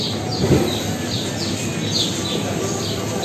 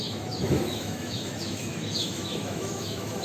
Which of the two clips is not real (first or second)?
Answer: second